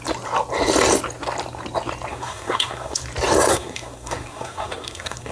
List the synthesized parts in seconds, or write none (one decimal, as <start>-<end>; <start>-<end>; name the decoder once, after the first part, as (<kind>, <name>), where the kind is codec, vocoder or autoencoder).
2.1-3.0 (codec, SNAC); 3.5-5.3